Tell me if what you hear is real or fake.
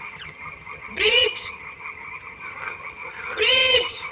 fake